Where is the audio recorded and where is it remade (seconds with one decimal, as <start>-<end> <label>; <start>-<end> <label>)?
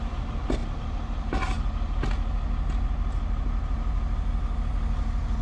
0.0-5.4 recorded